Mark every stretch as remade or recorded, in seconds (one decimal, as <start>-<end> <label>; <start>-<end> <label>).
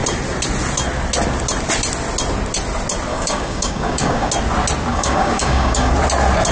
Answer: 0.0-3.1 recorded; 3.1-4.3 remade; 4.3-4.9 recorded; 4.9-5.9 remade; 5.9-6.5 recorded